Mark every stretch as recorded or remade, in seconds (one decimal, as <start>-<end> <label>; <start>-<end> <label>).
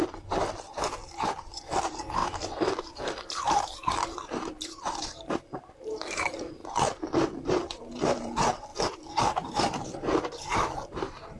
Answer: 0.0-11.4 remade